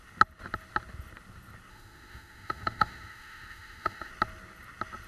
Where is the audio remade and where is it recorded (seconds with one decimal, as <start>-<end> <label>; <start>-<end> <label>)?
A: 0.0-1.7 recorded; 1.7-4.1 remade; 4.1-5.1 recorded

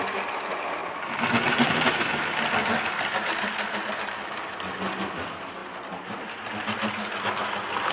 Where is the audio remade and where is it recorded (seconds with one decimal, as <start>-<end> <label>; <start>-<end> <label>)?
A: 0.0-7.9 recorded

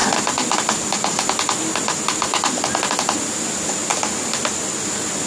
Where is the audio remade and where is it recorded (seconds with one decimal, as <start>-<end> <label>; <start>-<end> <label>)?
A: 0.0-5.3 recorded

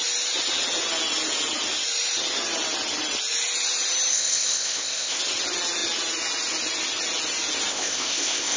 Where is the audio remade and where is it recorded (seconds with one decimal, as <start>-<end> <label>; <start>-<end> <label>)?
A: 0.0-4.1 recorded; 4.1-5.2 remade; 5.2-7.7 recorded; 7.7-8.6 remade